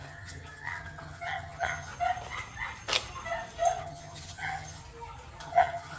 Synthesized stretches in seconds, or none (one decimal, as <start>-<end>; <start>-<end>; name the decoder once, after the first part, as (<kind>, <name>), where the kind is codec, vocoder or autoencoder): 0.0-1.9 (vocoder, HiFi-GAN); 3.8-4.8; 5.4-6.0